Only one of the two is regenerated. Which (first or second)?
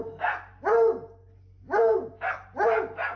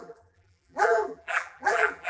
second